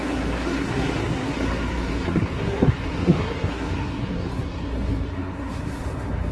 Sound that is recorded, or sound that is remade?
remade